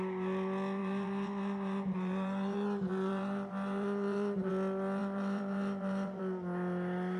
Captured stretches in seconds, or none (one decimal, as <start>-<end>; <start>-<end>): 0.0-0.8; 4.5-5.0; 6.2-7.2